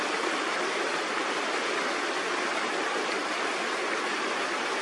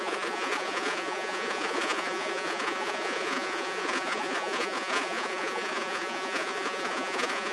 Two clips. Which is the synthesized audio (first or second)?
second